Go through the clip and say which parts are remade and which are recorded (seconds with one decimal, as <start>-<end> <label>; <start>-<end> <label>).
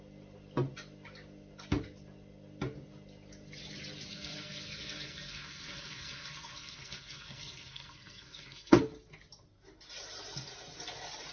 0.0-4.1 recorded; 4.1-8.8 remade; 8.8-11.3 recorded